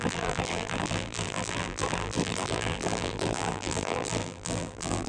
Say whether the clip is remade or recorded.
remade